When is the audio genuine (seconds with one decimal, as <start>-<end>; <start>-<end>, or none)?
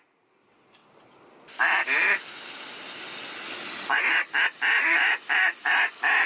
0.0-6.3